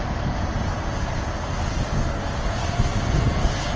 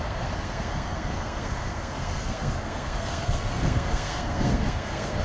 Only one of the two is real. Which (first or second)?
first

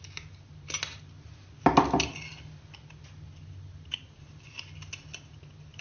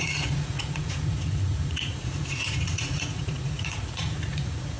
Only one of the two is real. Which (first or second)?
first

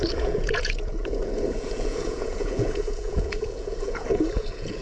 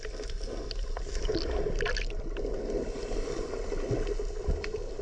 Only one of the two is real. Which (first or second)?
second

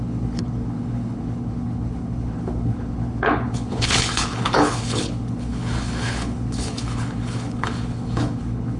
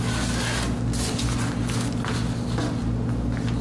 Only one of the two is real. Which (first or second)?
second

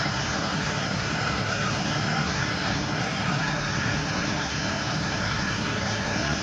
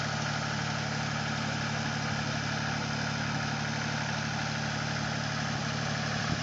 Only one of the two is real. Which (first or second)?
second